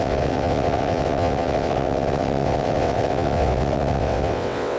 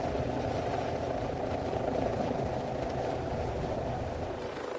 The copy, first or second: first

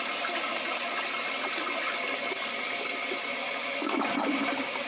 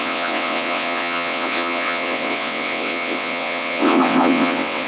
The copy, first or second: second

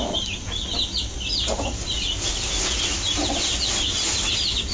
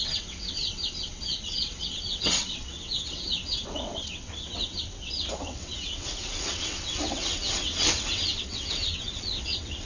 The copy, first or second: second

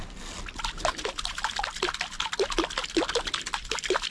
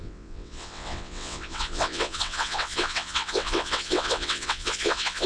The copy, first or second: second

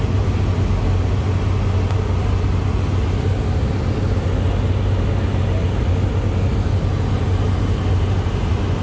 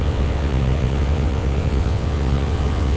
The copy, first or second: second